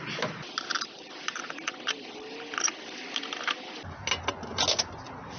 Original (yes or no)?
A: yes